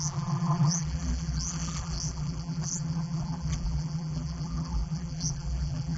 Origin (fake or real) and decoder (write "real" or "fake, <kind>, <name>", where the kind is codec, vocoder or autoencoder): fake, vocoder, BigVGAN v2